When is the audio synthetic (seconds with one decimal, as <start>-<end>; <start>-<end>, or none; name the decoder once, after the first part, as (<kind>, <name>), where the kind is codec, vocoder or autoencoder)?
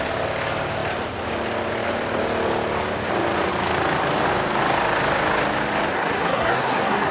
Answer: 5.9-7.1 (codec, SNAC)